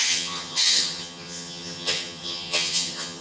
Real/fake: fake